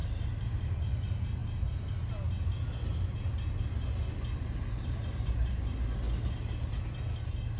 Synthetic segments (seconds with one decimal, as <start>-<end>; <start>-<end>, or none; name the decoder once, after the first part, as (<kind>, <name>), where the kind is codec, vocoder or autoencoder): none

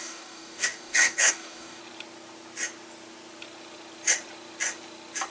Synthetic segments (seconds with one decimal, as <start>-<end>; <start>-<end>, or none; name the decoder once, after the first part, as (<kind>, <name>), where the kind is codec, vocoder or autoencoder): 0.0-1.8 (codec, DAC)

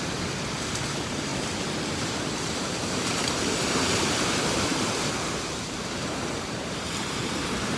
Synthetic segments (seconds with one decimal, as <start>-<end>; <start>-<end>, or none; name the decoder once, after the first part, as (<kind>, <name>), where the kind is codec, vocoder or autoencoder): 0.0-1.3 (vocoder, BigVGAN v2); 1.9-7.8